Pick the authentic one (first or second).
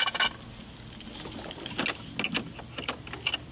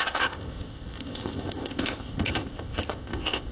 first